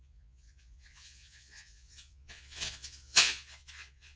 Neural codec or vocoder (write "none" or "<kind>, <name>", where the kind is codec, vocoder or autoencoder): vocoder, Vocos